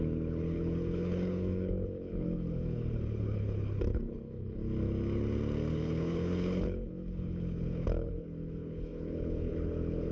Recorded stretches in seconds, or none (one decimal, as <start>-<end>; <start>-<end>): 4.6-5.7